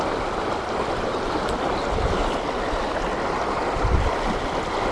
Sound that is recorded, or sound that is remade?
recorded